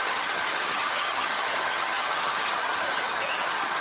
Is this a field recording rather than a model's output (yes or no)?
no